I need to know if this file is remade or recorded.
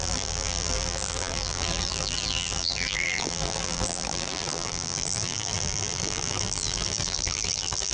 remade